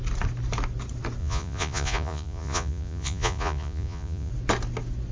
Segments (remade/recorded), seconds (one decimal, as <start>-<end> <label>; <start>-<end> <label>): 0.0-1.2 recorded; 1.2-4.3 remade; 4.3-5.1 recorded